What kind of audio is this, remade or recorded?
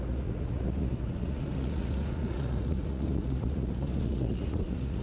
remade